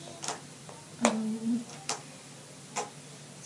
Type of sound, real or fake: fake